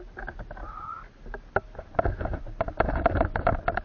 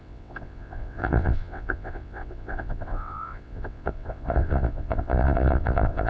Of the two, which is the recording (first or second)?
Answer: first